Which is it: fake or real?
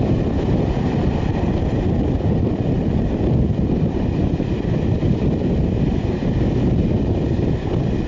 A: real